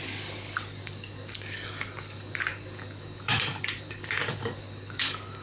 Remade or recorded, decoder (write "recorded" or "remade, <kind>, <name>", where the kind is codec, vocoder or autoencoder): remade, codec, DAC